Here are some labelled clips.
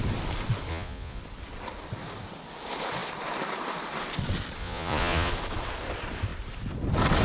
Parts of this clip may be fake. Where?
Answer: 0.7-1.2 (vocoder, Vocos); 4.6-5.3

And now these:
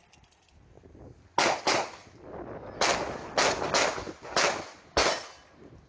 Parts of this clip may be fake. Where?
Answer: none

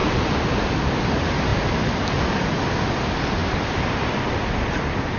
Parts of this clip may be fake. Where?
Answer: none

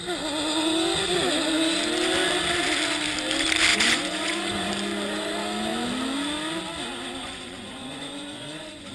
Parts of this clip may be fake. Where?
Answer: 3.7-4.7 (vocoder, Vocos); 7.2-8.9

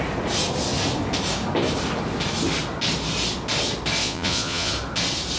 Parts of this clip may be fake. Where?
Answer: 4.0-4.7 (vocoder, Vocos)